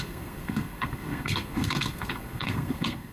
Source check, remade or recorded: remade